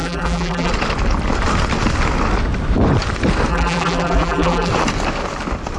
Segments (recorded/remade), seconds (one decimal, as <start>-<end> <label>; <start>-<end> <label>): 0.0-0.7 remade; 0.7-3.5 recorded; 3.5-4.7 remade; 4.7-5.8 recorded